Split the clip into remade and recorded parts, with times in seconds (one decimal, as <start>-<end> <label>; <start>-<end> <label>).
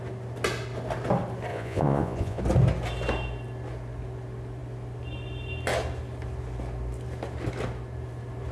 0.0-1.5 recorded; 1.5-2.4 remade; 2.4-8.5 recorded